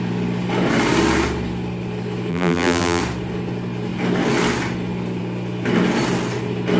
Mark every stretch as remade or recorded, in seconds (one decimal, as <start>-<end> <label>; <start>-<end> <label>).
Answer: 0.0-2.3 recorded; 2.3-3.0 remade; 3.0-6.8 recorded